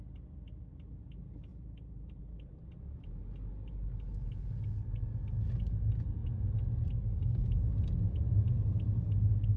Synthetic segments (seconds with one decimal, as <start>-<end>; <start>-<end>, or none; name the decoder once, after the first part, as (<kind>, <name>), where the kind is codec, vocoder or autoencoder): 1.5-2.2 (vocoder, BigVGAN v2)